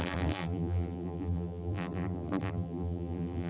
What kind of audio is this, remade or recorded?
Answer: remade